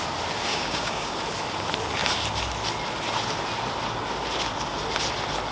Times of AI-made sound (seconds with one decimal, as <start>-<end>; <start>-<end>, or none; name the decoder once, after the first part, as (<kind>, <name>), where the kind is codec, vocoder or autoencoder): 0.5-1.1 (codec, DAC)